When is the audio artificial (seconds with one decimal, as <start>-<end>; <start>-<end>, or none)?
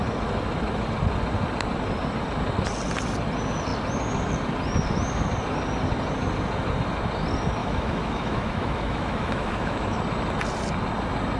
7.6-10.0